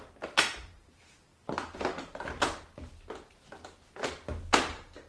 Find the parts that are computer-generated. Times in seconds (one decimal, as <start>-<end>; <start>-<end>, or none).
none